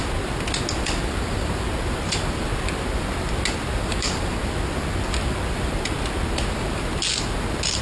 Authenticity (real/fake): real